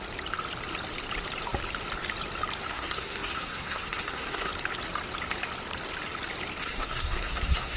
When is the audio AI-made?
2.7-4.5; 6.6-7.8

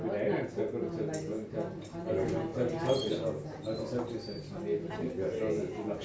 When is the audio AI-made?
none

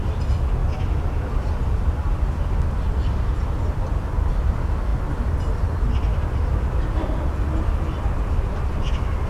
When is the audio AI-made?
none

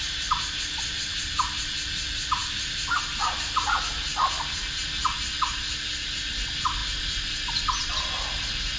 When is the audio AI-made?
none